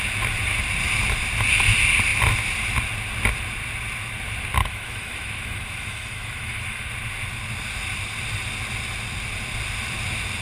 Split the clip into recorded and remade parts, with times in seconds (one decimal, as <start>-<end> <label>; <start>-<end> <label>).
0.0-4.6 recorded; 4.6-6.9 remade; 6.9-10.4 recorded